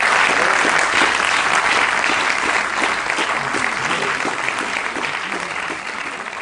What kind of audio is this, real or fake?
real